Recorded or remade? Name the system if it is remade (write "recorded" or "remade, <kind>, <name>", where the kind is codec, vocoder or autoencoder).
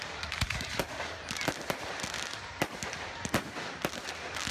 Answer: recorded